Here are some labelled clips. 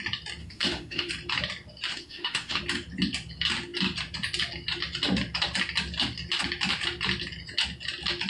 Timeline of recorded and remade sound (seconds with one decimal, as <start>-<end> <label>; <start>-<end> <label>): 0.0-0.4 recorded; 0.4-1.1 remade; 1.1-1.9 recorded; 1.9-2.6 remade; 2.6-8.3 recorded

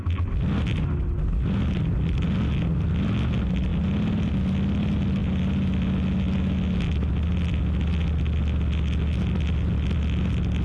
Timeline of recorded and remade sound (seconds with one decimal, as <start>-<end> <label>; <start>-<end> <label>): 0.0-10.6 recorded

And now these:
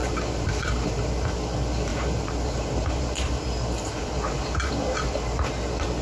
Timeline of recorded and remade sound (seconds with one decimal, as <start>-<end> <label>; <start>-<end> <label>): 0.0-1.1 remade; 1.1-1.9 recorded; 1.9-5.5 remade; 5.5-6.0 recorded

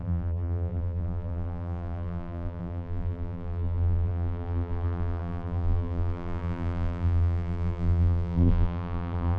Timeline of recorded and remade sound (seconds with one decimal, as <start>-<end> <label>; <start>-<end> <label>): 0.0-9.4 remade